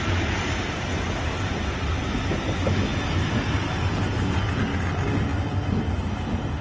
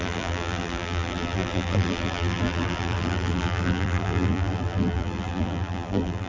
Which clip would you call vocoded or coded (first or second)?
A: second